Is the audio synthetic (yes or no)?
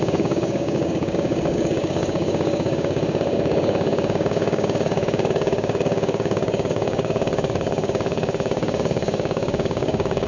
yes